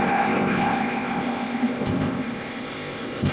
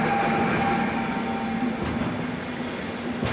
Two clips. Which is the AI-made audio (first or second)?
first